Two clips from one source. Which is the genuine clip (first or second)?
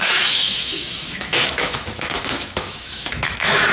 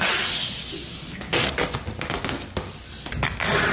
second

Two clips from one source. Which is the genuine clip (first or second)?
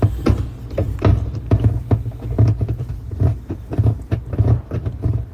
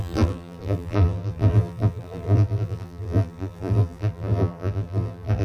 first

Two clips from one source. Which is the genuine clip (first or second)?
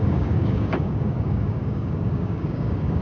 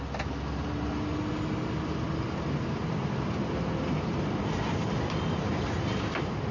second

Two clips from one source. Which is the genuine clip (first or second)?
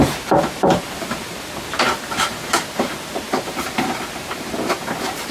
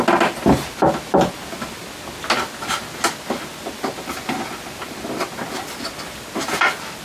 second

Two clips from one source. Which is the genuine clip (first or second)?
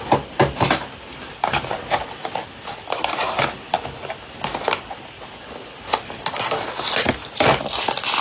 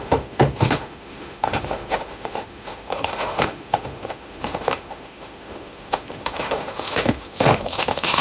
first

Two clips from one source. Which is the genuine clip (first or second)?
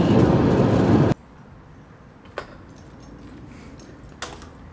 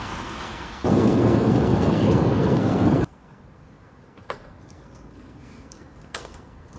first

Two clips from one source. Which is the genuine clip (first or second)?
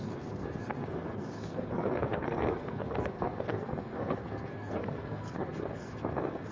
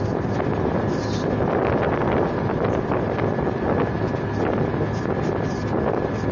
second